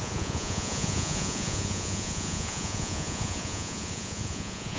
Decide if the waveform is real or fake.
fake